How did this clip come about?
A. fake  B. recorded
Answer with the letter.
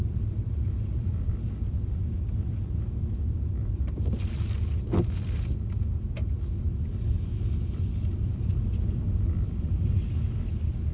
B